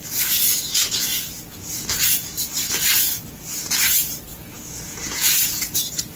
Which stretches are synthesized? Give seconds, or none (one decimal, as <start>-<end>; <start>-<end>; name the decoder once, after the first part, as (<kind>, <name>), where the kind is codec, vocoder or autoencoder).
4.3-6.2 (vocoder, Vocos)